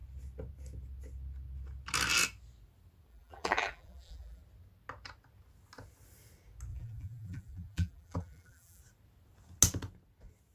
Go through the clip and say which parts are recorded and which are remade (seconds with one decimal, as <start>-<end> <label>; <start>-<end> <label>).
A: 0.0-3.1 recorded; 3.1-4.4 remade; 4.4-6.7 recorded; 6.7-8.8 remade; 8.8-10.5 recorded